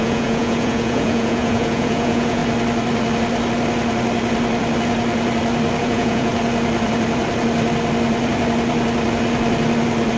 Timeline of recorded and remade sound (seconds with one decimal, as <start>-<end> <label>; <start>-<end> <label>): 0.0-2.4 remade; 2.4-5.8 recorded; 5.8-6.3 remade; 6.3-10.2 recorded